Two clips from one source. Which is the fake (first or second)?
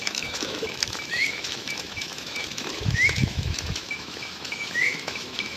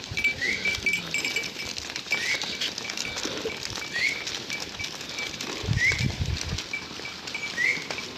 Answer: first